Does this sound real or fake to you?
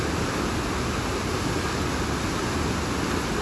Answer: real